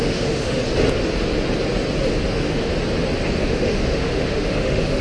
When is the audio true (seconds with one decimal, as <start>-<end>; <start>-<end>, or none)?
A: 0.6-2.3; 2.7-3.4